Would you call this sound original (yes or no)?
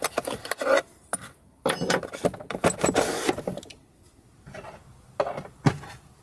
yes